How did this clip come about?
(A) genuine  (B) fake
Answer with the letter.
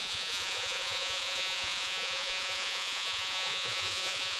B